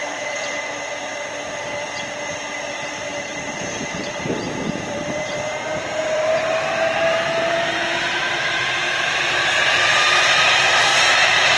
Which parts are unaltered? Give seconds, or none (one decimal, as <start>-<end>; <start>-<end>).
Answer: 1.1-2.6; 10.9-11.6